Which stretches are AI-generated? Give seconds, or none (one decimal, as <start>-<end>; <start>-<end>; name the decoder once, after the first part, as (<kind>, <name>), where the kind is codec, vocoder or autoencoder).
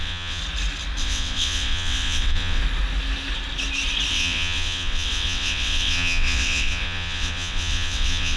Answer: 0.0-0.4 (vocoder, WaveNeXt); 1.0-2.6; 4.1-8.4